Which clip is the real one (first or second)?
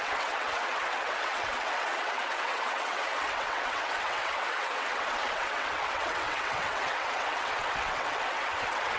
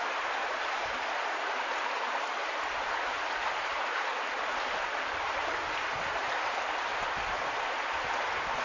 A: second